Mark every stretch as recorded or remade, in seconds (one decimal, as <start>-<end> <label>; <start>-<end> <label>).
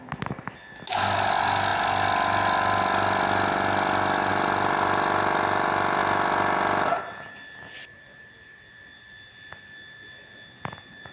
0.0-11.1 recorded